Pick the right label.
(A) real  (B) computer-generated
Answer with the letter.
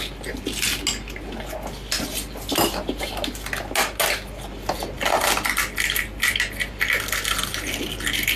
A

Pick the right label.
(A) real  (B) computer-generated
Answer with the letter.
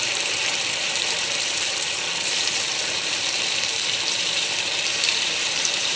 B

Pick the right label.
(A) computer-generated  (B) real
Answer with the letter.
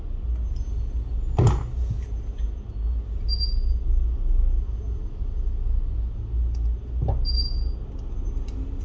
B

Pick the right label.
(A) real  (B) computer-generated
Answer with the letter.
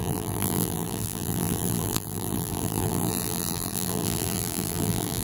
B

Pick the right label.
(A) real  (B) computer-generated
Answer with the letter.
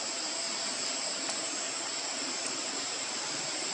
A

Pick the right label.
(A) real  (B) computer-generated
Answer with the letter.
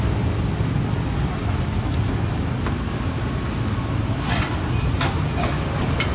A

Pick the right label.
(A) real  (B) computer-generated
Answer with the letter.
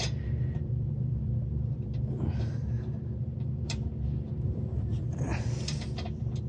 B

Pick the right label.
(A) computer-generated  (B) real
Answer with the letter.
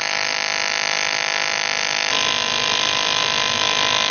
B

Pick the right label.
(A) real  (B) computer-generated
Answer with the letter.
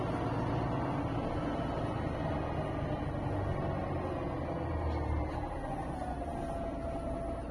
A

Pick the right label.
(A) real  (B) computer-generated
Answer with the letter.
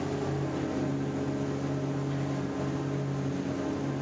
A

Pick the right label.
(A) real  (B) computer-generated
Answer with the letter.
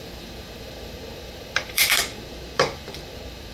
B